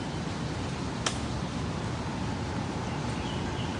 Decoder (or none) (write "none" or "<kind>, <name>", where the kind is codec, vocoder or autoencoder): none